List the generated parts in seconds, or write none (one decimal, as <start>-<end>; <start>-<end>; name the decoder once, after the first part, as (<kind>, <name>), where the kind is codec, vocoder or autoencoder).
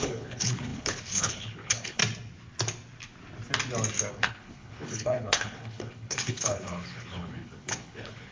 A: 0.0-2.0 (codec, HILCodec); 4.1-8.3